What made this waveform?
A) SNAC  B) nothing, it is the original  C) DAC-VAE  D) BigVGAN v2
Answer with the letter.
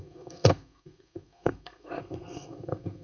A